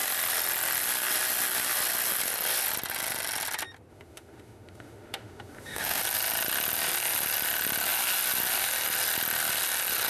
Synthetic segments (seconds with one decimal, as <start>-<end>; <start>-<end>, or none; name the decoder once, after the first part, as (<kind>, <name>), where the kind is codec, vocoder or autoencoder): 3.9-6.0 (autoencoder, DAC-VAE)